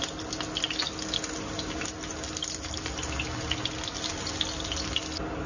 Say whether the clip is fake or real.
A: real